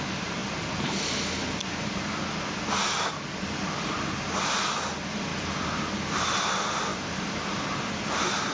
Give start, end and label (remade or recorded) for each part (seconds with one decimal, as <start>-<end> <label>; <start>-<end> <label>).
0.0-5.3 recorded; 5.3-5.8 remade; 5.8-6.9 recorded; 6.9-7.6 remade; 7.6-8.5 recorded